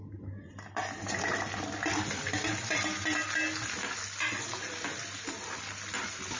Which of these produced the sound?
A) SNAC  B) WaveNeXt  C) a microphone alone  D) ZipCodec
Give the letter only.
C